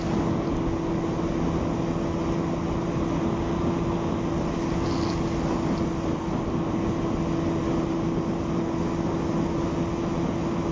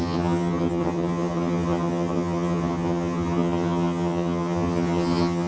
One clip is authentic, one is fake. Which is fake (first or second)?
second